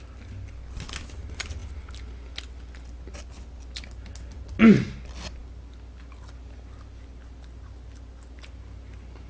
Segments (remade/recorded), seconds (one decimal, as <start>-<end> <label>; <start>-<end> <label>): 0.0-9.3 recorded